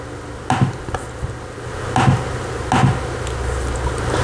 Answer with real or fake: real